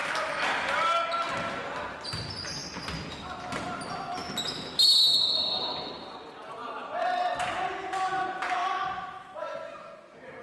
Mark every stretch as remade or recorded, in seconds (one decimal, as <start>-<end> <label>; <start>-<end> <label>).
0.0-10.4 recorded